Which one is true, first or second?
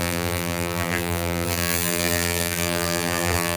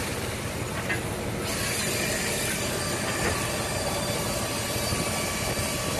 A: second